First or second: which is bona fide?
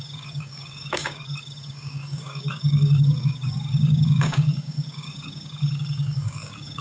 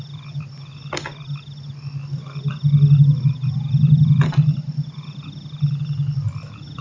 second